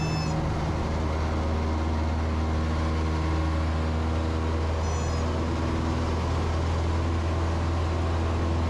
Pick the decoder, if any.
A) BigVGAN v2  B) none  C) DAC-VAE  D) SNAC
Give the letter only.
B